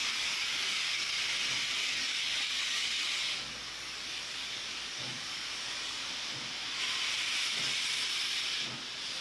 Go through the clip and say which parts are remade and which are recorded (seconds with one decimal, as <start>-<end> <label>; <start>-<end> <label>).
0.0-1.2 remade; 1.2-1.8 recorded; 1.8-6.1 remade; 6.1-9.2 recorded